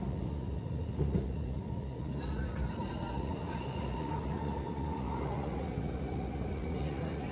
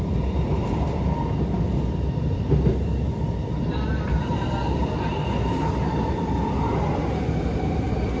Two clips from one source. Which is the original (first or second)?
second